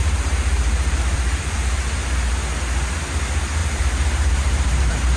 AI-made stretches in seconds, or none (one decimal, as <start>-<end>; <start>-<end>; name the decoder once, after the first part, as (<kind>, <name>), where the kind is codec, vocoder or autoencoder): 0.0-2.5 (vocoder, BigVGAN v2); 3.6-5.2